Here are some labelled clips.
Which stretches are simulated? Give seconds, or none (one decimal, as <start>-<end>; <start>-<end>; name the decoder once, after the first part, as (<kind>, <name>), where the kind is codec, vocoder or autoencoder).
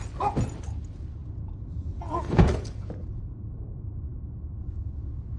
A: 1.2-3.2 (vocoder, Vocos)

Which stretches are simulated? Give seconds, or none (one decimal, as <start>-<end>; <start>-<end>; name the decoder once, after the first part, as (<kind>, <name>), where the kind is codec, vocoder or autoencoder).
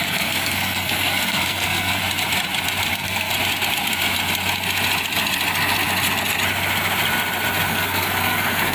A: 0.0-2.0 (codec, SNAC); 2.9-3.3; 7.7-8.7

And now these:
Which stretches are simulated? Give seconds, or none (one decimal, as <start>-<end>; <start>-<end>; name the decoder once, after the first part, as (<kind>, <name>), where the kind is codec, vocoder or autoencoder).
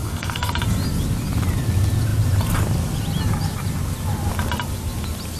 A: 0.0-0.5 (codec, SNAC)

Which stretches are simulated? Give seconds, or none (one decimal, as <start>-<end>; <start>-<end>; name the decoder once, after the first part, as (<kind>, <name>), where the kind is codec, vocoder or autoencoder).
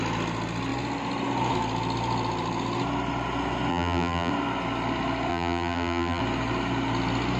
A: 3.7-4.3 (vocoder, BigVGAN v2); 5.3-6.2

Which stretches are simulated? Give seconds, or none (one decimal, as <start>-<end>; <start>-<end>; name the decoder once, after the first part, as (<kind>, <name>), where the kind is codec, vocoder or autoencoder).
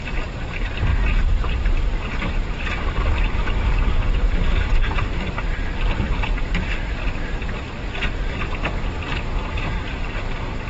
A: 0.0-6.7 (vocoder, BigVGAN v2); 9.2-10.7